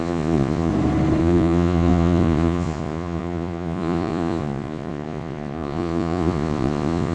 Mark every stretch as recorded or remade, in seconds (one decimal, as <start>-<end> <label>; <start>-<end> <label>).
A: 0.0-0.7 remade; 0.7-1.2 recorded; 1.2-7.1 remade